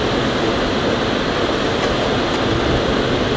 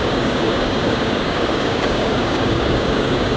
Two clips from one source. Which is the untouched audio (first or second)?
first